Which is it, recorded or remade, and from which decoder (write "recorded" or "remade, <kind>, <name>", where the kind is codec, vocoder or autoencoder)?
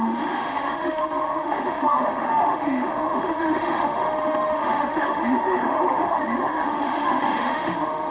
remade, autoencoder, DAC-VAE